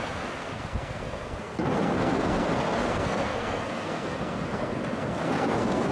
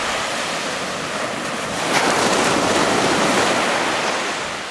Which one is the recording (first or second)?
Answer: second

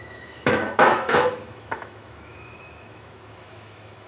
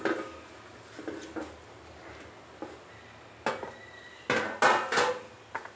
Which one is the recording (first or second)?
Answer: second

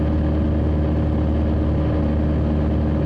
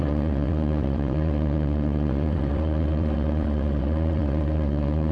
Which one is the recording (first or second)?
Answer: first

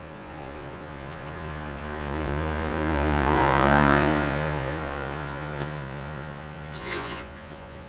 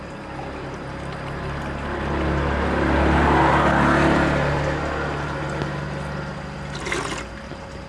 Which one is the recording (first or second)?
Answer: second